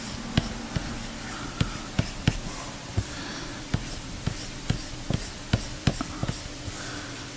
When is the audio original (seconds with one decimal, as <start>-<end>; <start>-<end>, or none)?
0.0-7.4